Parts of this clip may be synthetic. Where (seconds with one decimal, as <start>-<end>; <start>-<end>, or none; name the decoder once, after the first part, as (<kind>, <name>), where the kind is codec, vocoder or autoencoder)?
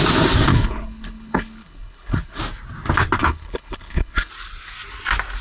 0.5-2.4 (codec, HILCodec); 3.2-4.3